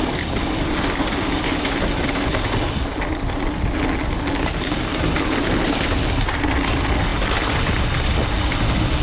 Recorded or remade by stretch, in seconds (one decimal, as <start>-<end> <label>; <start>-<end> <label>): 0.0-9.0 recorded